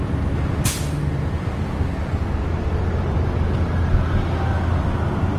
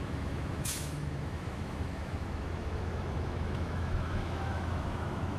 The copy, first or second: second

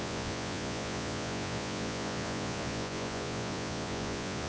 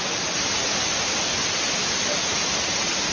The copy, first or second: first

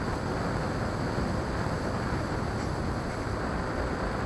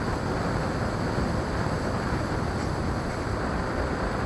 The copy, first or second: second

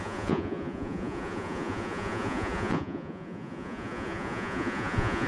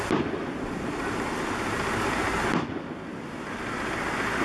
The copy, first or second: first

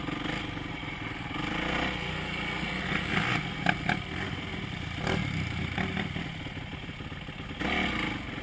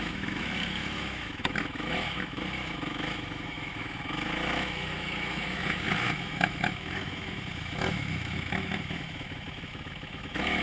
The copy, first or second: second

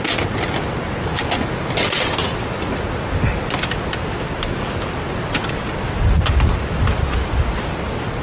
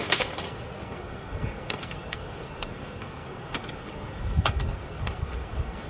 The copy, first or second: second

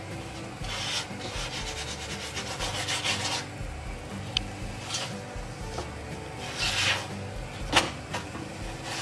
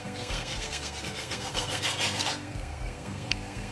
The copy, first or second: second